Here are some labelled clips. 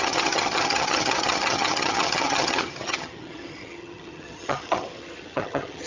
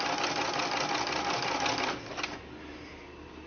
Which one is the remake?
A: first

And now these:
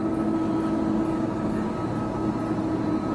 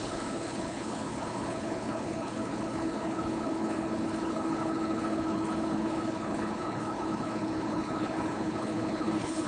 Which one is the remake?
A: second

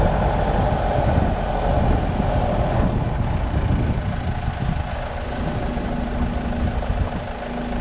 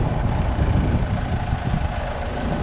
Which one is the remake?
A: second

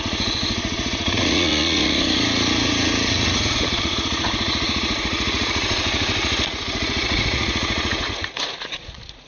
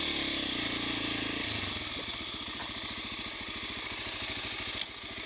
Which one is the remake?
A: first